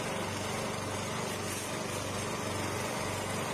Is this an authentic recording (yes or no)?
yes